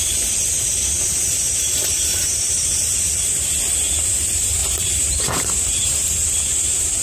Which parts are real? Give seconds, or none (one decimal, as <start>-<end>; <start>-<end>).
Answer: 0.0-0.5; 3.5-4.6; 6.1-7.0

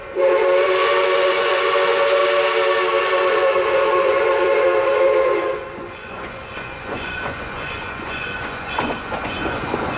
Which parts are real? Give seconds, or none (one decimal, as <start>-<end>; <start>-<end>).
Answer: 2.2-3.0

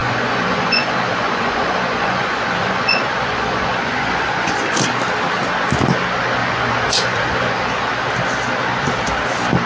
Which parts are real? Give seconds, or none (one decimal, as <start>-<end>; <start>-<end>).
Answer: 4.9-6.4; 7.9-9.7

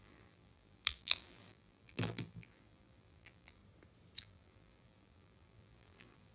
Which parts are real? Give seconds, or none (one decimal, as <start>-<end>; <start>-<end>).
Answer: 3.6-4.2